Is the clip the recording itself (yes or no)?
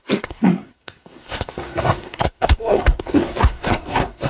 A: no